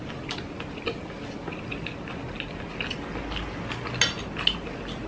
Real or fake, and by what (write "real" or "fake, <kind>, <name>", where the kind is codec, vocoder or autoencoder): real